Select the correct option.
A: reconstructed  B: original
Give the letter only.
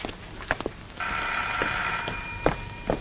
B